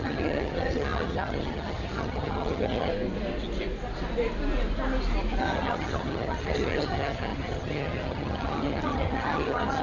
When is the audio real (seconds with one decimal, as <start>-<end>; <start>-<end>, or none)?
2.9-5.4